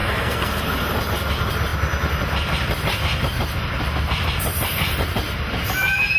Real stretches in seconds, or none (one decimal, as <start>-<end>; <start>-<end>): 0.6-6.2

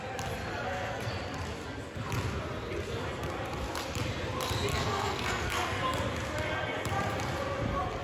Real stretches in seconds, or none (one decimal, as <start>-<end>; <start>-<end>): 0.0-0.5; 1.1-4.7; 5.8-8.0

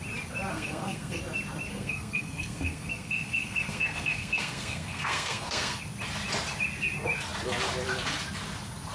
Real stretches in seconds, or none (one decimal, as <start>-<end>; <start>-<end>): 0.0-0.5; 1.2-1.7; 5.8-8.9

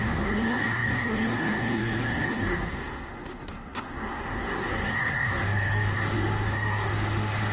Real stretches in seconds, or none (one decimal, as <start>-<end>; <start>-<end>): none

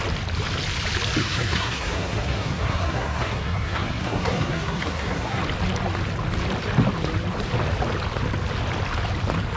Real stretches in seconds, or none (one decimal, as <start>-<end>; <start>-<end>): 0.0-1.2; 5.4-9.6

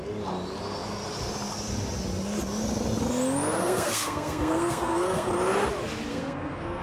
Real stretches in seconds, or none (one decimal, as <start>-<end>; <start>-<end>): 0.0-3.6; 5.3-6.1

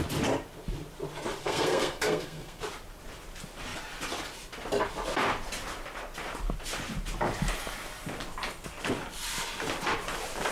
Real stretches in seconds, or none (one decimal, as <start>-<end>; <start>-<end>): 0.0-1.4; 2.6-10.5

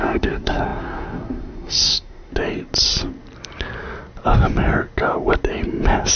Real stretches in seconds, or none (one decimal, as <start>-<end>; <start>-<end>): 2.3-6.2